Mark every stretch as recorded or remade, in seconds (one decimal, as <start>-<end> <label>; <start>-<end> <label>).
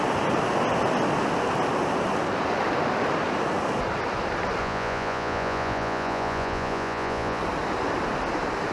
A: 0.0-4.6 recorded; 4.6-7.4 remade; 7.4-8.7 recorded